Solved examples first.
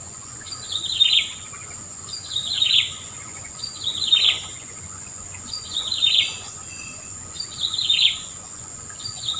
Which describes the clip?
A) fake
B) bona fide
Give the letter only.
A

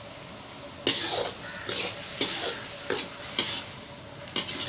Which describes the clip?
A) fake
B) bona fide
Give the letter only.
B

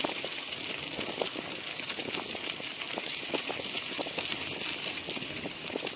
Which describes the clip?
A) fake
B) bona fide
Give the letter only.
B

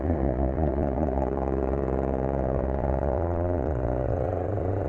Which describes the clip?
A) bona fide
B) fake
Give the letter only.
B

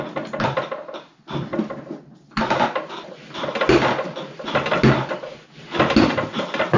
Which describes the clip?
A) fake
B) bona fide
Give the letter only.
B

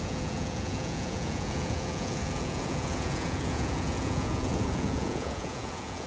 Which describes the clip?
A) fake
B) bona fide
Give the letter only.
A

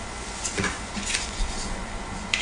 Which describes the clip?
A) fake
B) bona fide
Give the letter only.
A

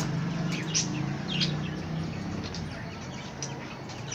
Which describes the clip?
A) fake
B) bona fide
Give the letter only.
B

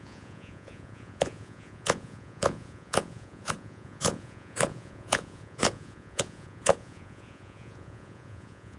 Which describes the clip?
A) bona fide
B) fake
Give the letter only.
B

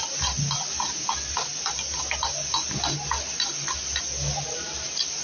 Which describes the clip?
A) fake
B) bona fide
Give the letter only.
B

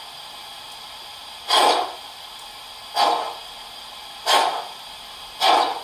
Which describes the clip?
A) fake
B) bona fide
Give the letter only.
B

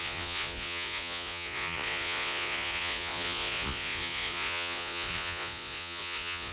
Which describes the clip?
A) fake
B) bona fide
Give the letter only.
A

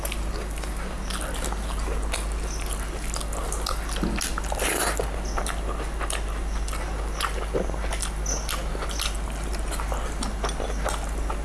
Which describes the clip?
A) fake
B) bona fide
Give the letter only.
B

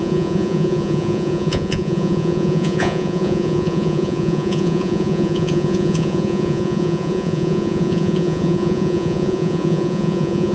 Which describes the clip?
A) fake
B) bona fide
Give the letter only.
A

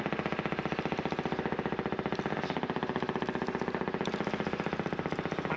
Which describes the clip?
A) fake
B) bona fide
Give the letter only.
B